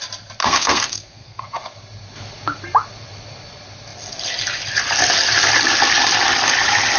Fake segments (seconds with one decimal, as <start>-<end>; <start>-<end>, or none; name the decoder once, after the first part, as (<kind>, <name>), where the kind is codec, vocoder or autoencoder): 0.4-1.4 (codec, SNAC)